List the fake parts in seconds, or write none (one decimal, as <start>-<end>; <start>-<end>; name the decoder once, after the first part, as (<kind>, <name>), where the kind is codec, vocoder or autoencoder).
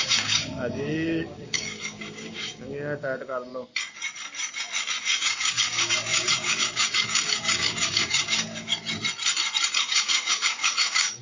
0.0-3.5 (codec, DAC); 5.0-8.7; 9.8-11.2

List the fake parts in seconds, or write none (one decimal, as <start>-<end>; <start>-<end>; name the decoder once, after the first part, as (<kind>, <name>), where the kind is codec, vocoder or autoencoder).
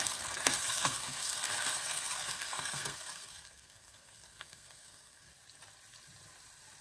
0.0-5.3 (codec, SNAC)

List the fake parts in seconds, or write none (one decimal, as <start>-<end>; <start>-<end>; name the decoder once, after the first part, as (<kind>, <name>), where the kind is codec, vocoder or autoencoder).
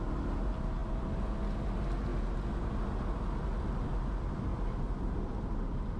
4.5-5.5 (vocoder, BigVGAN v2)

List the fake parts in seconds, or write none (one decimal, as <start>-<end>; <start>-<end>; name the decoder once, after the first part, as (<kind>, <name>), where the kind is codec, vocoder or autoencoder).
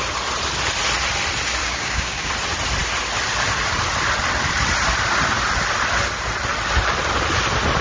1.6-2.3 (codec, DAC)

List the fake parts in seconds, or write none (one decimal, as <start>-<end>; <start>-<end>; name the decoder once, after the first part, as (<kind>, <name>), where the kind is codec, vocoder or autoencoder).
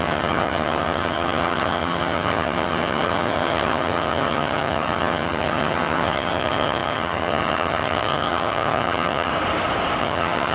0.0-9.3 (vocoder, HiFi-GAN); 10.0-10.5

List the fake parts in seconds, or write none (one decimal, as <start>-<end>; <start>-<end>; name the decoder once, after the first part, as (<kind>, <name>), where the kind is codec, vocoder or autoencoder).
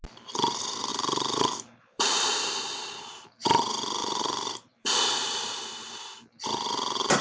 0.9-2.5 (vocoder, BigVGAN v2); 4.0-5.7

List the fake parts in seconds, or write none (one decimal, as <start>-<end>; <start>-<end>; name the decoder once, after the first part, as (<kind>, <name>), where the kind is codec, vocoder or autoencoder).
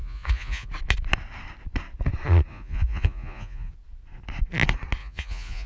0.0-0.7 (vocoder, Vocos); 2.5-3.7; 5.0-5.7